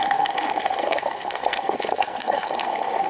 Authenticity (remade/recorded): remade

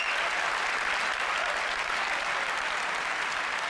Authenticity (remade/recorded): recorded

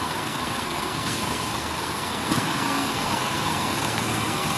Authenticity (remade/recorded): remade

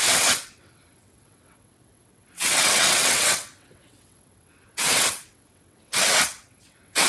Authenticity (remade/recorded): remade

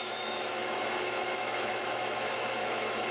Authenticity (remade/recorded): remade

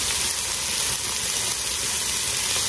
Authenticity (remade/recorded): recorded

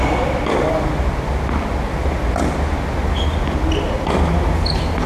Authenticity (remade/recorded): recorded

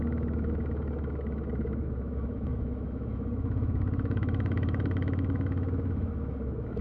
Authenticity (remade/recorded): remade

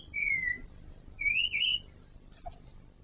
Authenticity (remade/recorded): recorded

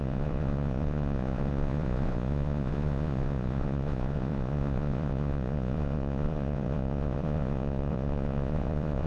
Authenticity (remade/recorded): remade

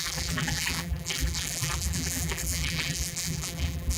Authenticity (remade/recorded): remade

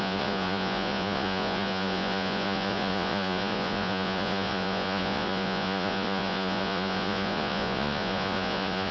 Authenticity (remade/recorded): remade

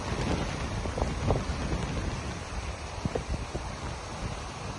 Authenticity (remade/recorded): recorded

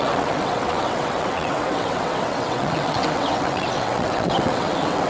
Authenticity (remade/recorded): remade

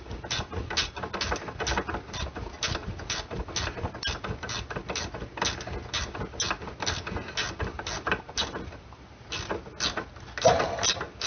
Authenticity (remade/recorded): recorded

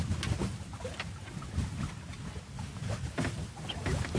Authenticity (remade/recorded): recorded